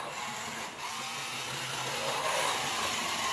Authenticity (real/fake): real